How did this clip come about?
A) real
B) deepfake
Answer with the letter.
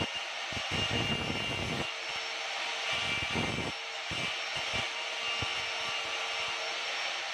A